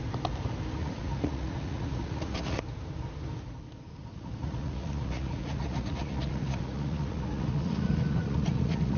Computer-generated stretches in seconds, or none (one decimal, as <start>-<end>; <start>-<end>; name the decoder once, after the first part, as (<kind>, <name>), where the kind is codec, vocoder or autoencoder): 0.8-2.6 (vocoder, Vocos); 4.1-9.0